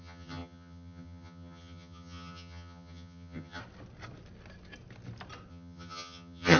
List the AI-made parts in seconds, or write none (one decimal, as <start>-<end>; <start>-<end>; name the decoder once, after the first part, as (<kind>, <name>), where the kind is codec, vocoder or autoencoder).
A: 0.0-3.6 (vocoder, HiFi-GAN); 5.5-6.6

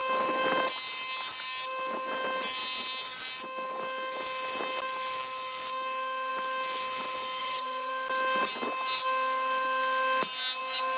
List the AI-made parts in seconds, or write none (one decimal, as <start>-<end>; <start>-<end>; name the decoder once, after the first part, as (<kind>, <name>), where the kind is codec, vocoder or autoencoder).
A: 7.4-7.9 (vocoder, HiFi-GAN)

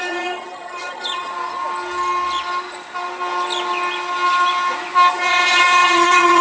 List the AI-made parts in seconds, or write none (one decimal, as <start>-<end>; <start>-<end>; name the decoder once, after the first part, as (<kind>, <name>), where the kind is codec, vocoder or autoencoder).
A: 0.0-1.3 (vocoder, HiFi-GAN); 5.1-6.4

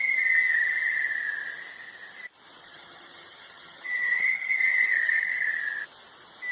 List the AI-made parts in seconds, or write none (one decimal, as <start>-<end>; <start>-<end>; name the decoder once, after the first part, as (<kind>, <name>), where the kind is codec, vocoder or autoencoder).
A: 2.6-5.5 (vocoder, HiFi-GAN)

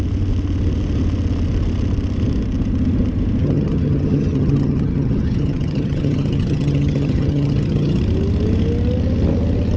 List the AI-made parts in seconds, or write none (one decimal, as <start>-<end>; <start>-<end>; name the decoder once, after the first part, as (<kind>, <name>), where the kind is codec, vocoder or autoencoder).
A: 3.4-8.0 (vocoder, HiFi-GAN)

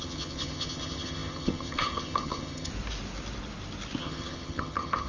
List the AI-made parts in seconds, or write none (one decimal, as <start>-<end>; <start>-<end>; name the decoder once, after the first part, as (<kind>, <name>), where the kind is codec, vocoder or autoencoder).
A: 0.0-2.7 (vocoder, HiFi-GAN); 4.0-5.1